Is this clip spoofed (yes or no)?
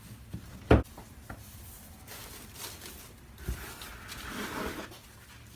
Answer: no